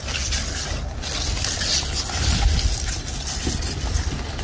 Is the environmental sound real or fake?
real